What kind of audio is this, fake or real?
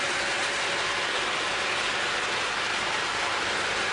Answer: real